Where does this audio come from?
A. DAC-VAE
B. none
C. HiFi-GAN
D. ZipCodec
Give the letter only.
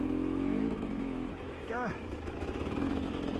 A